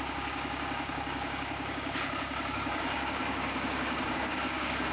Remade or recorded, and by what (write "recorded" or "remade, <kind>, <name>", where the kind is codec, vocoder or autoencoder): remade, codec, DAC